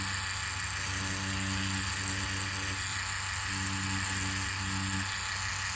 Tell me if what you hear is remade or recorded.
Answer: recorded